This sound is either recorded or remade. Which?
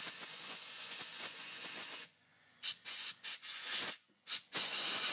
remade